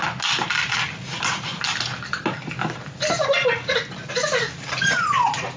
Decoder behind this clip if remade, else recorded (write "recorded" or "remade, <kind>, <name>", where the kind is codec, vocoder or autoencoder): recorded